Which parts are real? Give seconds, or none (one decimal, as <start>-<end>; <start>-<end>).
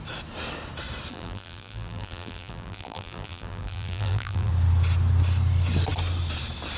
0.0-1.1; 4.5-6.8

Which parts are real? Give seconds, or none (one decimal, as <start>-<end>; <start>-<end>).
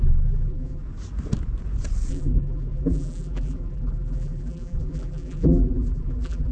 0.8-2.1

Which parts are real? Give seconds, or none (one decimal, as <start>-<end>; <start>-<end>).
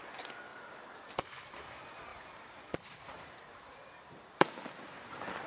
0.0-0.5; 1.0-2.1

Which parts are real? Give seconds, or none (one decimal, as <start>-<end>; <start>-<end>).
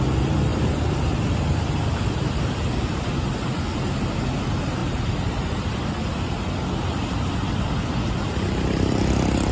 0.0-9.5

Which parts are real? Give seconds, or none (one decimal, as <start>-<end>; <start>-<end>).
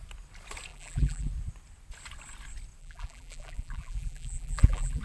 0.0-0.7; 1.3-2.8